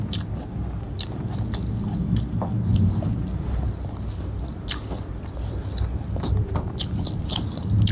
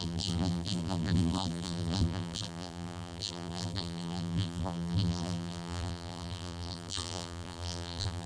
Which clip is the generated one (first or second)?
second